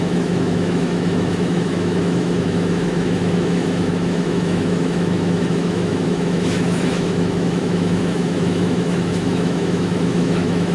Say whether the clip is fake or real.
fake